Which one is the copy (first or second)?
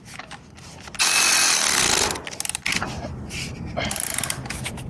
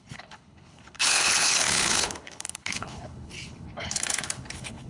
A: second